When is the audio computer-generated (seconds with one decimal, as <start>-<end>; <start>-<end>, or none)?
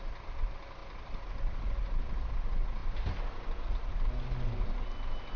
none